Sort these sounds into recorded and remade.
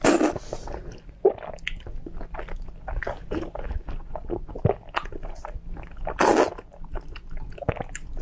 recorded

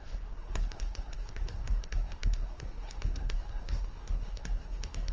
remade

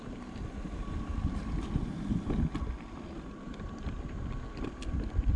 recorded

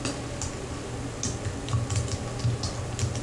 recorded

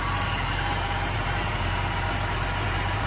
recorded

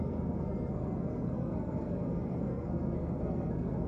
remade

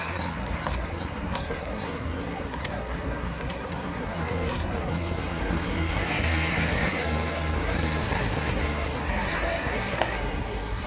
remade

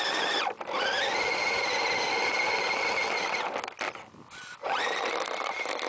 recorded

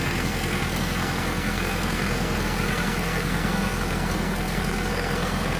remade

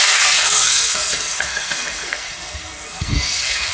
remade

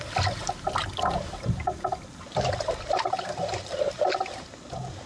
recorded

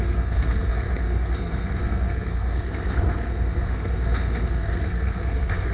remade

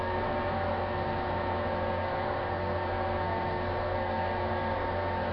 remade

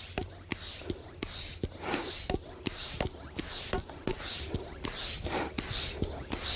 recorded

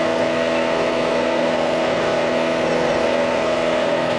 remade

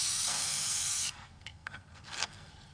remade